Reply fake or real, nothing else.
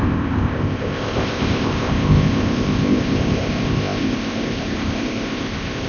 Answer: fake